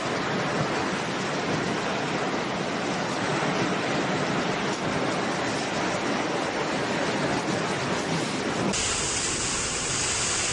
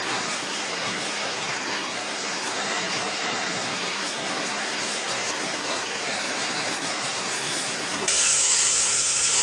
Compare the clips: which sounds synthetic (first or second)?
second